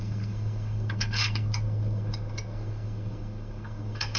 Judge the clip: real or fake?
fake